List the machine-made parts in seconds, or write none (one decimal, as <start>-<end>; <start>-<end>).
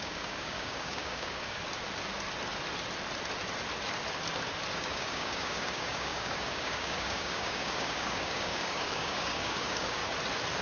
0.0-1.6; 4.7-10.0